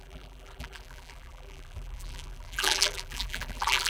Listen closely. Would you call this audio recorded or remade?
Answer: remade